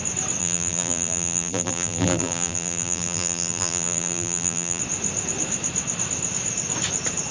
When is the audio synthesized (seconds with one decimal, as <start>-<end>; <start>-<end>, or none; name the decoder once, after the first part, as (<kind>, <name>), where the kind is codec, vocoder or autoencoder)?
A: 0.4-4.8 (vocoder, BigVGAN v2)